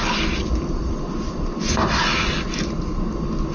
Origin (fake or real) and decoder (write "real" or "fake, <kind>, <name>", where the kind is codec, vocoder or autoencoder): real